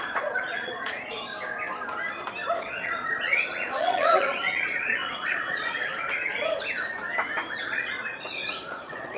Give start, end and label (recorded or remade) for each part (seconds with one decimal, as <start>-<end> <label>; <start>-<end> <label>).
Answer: 0.0-1.3 remade; 1.3-2.6 recorded; 2.6-5.9 remade; 5.9-7.6 recorded; 7.6-9.2 remade